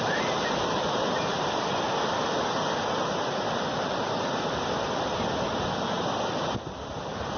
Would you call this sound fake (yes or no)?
no